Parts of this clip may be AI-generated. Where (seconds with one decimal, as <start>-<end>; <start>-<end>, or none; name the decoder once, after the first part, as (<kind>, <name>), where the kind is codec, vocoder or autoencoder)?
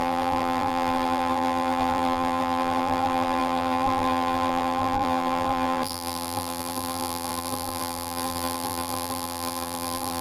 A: 0.0-10.2 (vocoder, BigVGAN v2)